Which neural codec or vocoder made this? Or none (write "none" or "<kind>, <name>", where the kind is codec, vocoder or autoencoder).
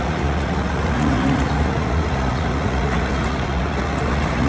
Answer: vocoder, Vocos